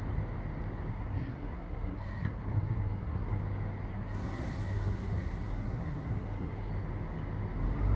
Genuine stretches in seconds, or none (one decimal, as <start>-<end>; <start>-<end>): 0.0-0.9; 3.4-3.9; 6.7-8.0